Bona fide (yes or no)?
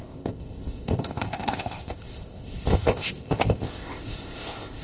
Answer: no